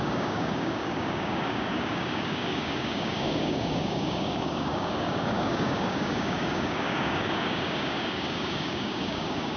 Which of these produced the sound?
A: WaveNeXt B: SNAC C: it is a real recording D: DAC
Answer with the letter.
D